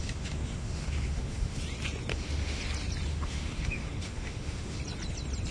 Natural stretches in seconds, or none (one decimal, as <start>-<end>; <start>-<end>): 1.6-2.1; 2.6-3.1; 4.8-5.5